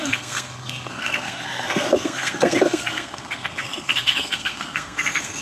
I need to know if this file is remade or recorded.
remade